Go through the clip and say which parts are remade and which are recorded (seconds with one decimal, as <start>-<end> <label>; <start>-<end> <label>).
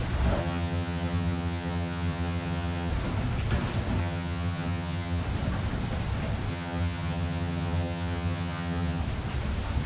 0.0-0.4 recorded; 0.4-2.9 remade; 2.9-4.0 recorded; 4.0-5.2 remade; 5.2-6.5 recorded; 6.5-9.0 remade; 9.0-9.9 recorded